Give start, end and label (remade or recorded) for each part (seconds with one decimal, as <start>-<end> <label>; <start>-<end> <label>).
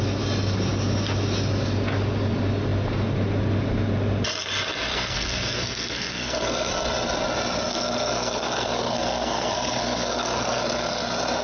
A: 0.0-4.9 recorded; 4.9-6.7 remade; 6.7-7.7 recorded; 7.7-11.0 remade; 11.0-11.4 recorded